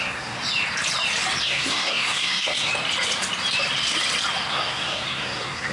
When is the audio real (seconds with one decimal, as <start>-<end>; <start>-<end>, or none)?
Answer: 0.4-1.4; 2.7-4.5